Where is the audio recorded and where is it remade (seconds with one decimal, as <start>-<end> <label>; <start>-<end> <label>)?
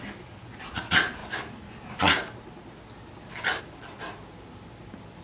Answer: 0.0-5.2 recorded